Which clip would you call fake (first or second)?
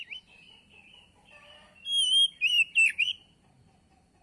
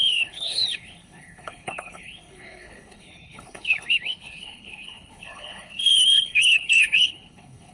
second